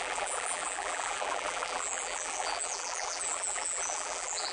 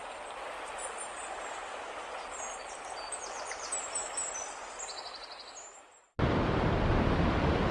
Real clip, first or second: second